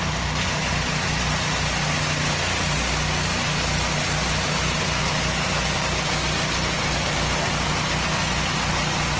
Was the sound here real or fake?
real